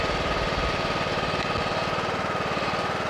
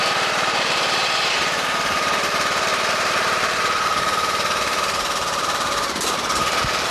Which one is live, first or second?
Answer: first